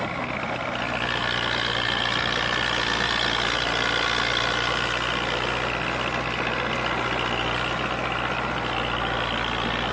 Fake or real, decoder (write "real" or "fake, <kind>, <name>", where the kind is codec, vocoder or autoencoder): real